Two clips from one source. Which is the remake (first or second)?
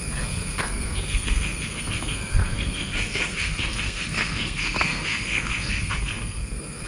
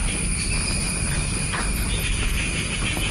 first